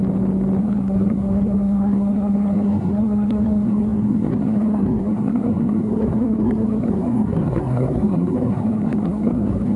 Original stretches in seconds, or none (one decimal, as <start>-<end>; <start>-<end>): 0.0-0.6